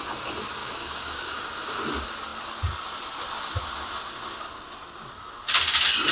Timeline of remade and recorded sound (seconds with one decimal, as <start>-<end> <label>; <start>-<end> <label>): 0.0-0.6 recorded; 0.6-1.4 remade; 1.4-6.1 recorded